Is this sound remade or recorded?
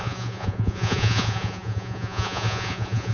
remade